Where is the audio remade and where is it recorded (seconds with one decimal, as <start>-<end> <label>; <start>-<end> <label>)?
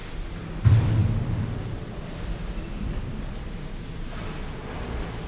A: 0.0-0.6 remade; 0.6-1.0 recorded; 1.0-4.2 remade; 4.2-5.3 recorded